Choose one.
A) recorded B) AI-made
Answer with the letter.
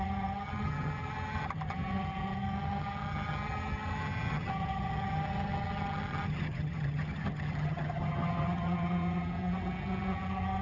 B